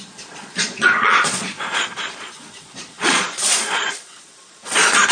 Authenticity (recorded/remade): remade